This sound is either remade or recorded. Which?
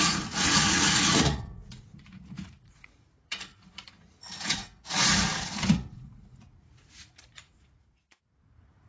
remade